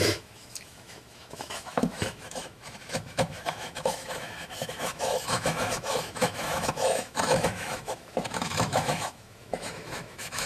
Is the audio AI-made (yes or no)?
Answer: yes